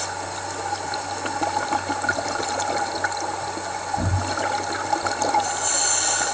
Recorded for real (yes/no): yes